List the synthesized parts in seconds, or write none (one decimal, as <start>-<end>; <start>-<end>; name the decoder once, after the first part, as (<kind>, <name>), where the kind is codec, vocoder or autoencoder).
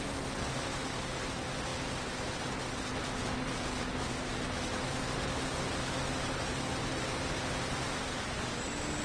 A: none